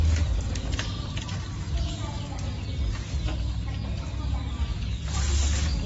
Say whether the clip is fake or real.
real